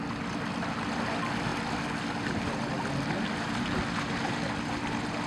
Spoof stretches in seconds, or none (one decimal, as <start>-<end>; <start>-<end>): none